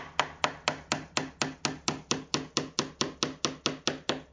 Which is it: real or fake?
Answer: real